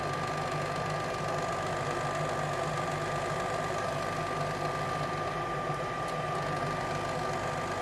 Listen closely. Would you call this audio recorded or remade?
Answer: recorded